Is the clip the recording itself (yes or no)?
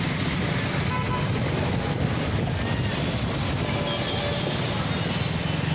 yes